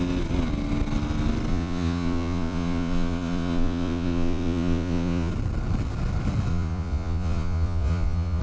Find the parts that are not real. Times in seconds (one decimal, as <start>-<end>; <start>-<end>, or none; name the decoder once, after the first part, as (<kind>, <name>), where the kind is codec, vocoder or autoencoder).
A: 1.5-5.3 (vocoder, Vocos); 6.5-8.4